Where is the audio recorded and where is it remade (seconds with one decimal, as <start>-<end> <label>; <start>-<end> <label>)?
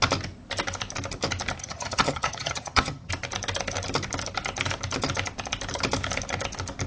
0.0-1.6 recorded; 1.6-3.1 remade; 3.1-6.9 recorded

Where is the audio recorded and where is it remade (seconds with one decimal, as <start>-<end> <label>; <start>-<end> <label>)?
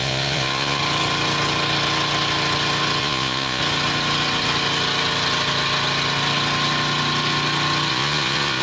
0.0-0.8 remade; 0.8-3.0 recorded; 3.0-3.6 remade; 3.6-7.9 recorded; 7.9-8.6 remade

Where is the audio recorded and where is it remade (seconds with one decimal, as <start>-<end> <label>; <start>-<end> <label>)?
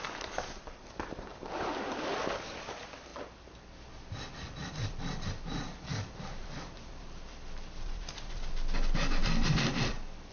0.0-1.3 recorded; 1.3-2.2 remade; 2.2-4.6 recorded; 4.6-8.5 remade; 8.5-9.2 recorded; 9.2-9.9 remade; 9.9-10.3 recorded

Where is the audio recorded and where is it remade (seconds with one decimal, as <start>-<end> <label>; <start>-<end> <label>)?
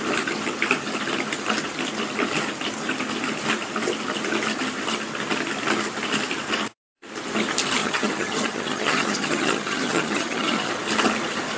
0.0-7.8 recorded; 7.8-10.7 remade; 10.7-11.6 recorded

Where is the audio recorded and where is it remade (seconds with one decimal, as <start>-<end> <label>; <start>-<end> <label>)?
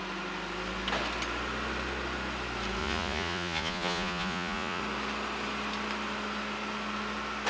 0.0-2.8 recorded; 2.8-4.8 remade; 4.8-7.5 recorded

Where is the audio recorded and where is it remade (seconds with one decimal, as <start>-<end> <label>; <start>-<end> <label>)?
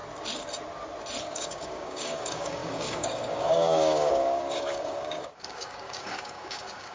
0.0-1.2 recorded; 1.2-6.9 remade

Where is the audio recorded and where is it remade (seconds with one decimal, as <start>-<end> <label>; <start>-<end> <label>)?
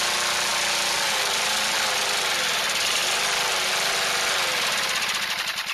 0.0-5.7 recorded